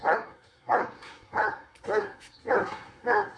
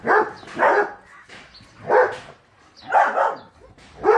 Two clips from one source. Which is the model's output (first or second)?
first